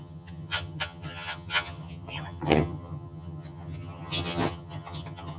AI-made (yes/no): yes